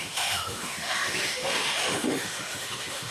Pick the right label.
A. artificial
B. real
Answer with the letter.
A